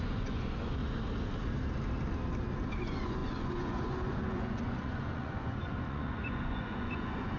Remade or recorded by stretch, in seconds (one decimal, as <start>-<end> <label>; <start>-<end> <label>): 0.0-0.8 remade; 0.8-2.8 recorded; 2.8-7.4 remade